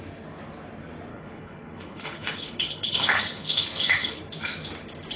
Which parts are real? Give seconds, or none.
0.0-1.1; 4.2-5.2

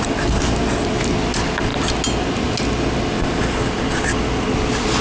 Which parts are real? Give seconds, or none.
0.0-5.0

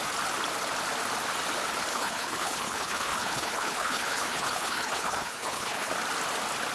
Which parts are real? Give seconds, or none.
0.0-1.9; 5.9-6.7

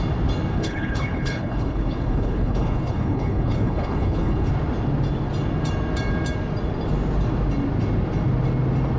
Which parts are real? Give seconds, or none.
0.0-0.5; 4.5-9.0

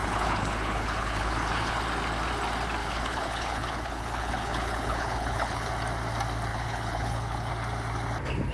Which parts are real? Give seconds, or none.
1.8-2.8; 5.7-6.5; 7.5-8.5

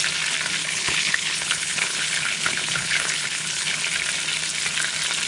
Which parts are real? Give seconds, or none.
0.0-0.6; 3.8-5.3